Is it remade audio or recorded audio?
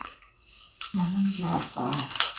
remade